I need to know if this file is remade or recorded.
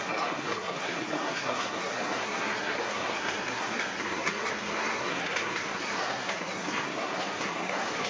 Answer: remade